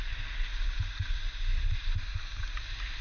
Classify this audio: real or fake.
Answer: real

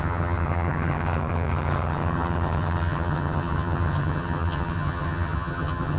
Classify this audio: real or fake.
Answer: fake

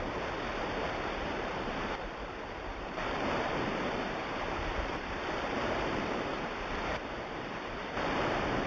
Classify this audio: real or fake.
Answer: fake